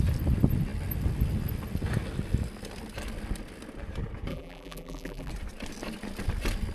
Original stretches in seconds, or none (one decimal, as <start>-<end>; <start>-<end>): 0.0-4.3; 5.3-6.7